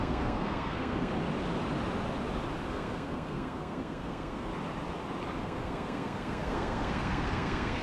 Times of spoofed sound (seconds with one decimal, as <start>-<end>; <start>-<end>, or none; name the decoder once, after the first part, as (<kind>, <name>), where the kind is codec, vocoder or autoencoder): 0.0-1.1 (codec, SNAC); 2.7-4.5; 5.4-7.8